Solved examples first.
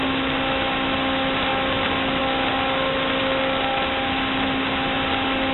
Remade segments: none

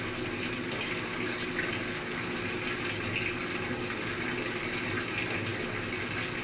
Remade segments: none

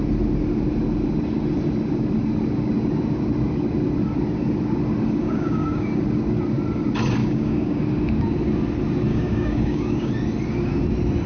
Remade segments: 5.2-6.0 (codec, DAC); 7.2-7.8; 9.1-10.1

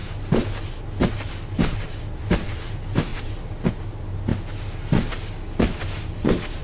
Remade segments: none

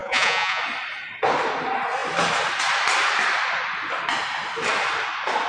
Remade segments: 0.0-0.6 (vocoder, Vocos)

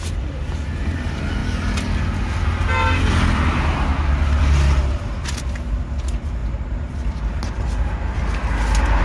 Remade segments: none

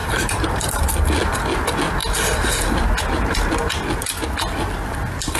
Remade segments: 0.0-0.9 (vocoder, BigVGAN v2)